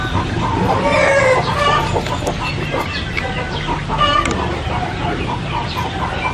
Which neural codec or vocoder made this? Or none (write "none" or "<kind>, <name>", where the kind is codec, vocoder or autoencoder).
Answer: none